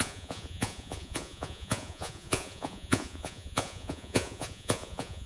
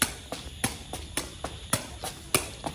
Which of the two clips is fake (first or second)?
first